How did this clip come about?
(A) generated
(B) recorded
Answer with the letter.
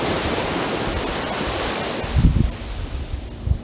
B